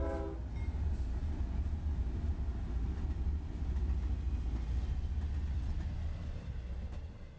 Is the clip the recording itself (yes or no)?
yes